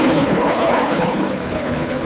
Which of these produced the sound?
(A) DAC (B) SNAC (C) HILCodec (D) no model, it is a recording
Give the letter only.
C